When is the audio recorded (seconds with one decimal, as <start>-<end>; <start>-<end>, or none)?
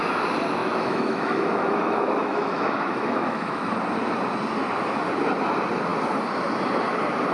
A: 0.0-0.6; 3.6-7.3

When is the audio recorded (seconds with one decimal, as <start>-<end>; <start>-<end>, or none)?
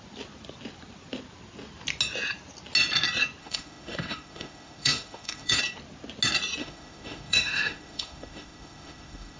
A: 0.0-3.4; 5.6-6.6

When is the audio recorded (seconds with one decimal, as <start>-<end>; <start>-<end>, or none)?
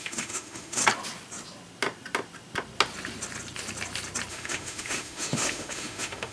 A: 0.8-4.3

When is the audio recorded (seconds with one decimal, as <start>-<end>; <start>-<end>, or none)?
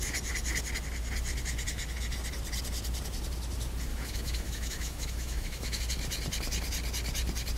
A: 0.0-3.9; 5.8-7.6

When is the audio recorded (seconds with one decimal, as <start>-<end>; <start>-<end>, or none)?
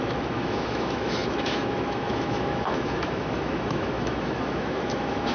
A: none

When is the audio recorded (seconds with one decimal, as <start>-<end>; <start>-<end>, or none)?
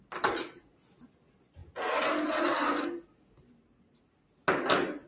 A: 0.0-5.1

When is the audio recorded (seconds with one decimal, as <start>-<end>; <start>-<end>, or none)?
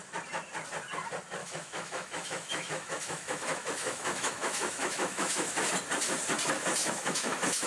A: 0.0-1.4; 5.7-6.8